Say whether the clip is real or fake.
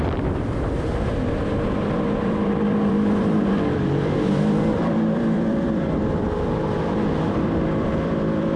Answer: fake